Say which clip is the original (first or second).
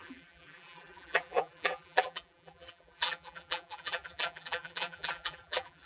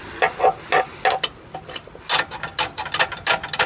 second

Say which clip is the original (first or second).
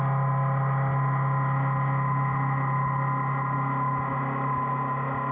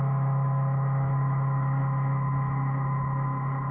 first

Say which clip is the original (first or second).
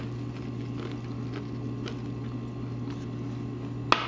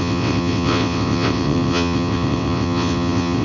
first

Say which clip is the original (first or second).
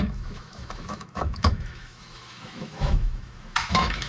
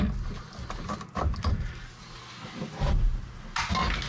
second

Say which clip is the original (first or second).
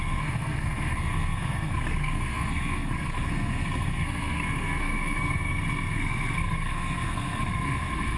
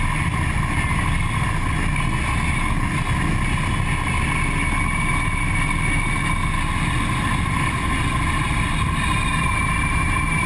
second